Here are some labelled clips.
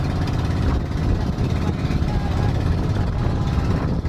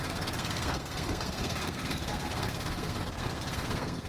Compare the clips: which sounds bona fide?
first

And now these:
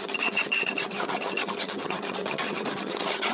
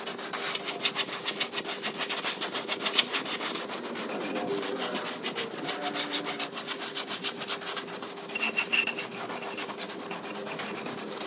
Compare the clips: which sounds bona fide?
second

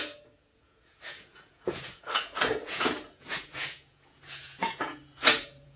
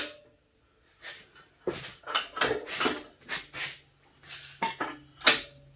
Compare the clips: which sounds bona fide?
second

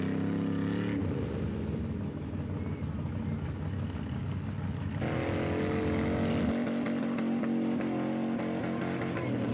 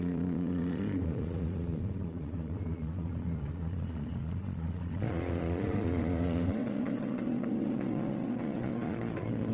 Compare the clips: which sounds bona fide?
first